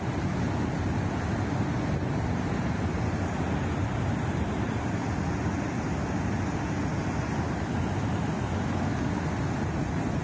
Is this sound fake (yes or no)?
no